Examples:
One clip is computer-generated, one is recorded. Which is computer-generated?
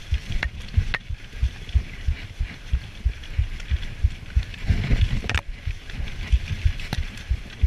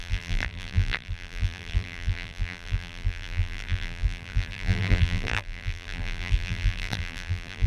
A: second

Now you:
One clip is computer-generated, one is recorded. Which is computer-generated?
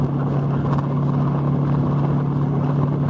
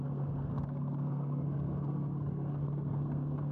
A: second